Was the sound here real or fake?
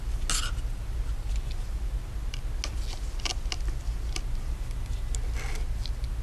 real